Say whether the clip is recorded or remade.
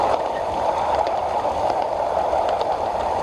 recorded